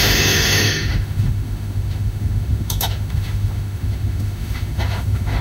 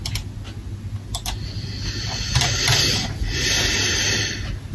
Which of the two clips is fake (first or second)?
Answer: first